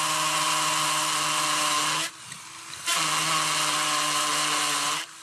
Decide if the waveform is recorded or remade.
recorded